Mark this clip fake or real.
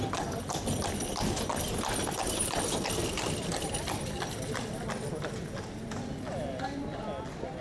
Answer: real